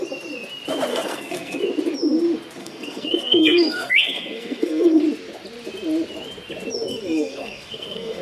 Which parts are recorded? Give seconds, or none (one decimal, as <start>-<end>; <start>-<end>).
0.0-0.9; 1.6-2.6; 5.0-6.9